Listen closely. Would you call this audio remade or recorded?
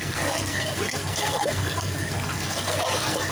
remade